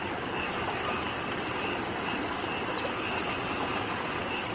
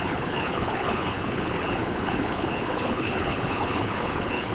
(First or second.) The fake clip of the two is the second